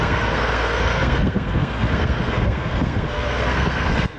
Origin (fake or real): fake